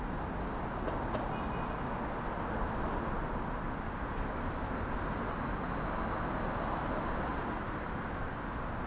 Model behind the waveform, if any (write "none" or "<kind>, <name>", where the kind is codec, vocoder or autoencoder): none